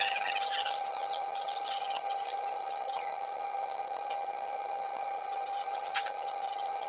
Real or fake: fake